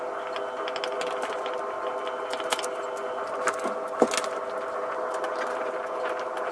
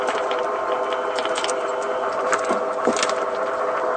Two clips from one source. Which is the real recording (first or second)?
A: first